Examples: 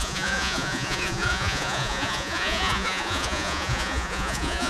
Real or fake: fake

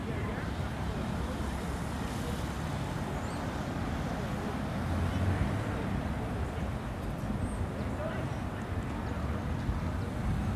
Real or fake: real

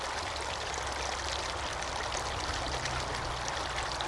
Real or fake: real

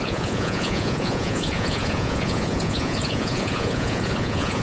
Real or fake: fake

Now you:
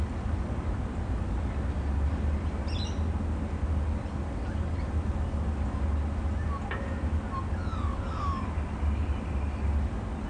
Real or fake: real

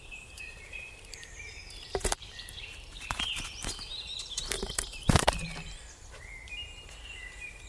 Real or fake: fake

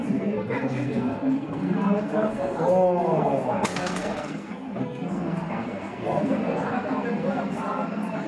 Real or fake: fake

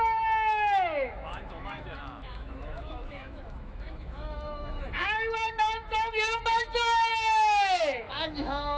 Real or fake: fake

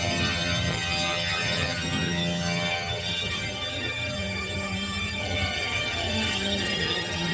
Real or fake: fake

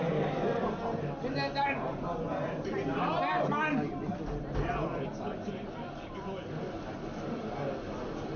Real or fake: real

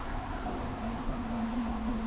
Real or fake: fake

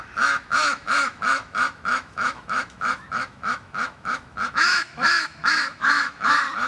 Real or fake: fake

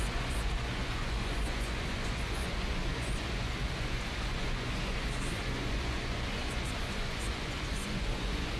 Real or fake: fake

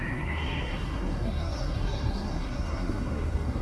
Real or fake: fake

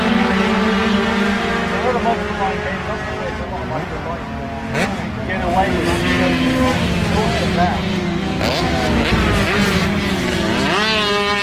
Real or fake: real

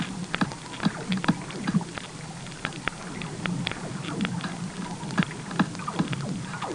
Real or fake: real